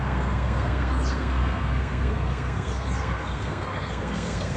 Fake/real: fake